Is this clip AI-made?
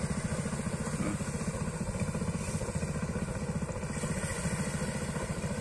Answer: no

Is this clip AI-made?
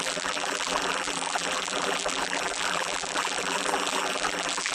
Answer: yes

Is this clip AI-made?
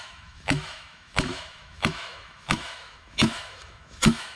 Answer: yes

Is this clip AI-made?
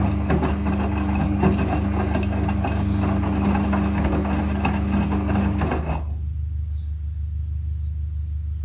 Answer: no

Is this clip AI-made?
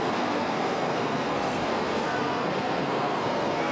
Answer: yes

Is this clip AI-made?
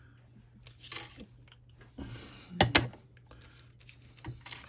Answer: no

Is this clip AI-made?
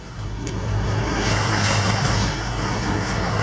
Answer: yes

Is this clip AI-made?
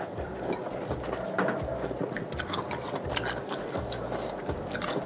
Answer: no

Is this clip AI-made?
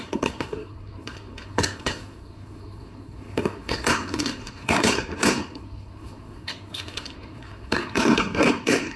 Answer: yes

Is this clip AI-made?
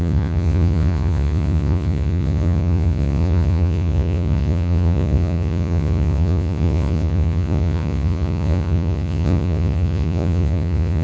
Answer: yes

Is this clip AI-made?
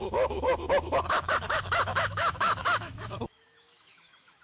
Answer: yes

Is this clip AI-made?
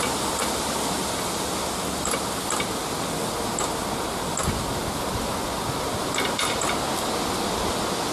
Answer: no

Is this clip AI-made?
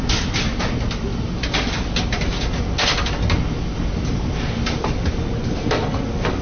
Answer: no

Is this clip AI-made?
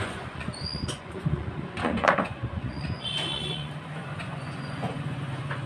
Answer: yes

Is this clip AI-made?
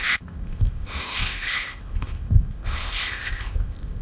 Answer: yes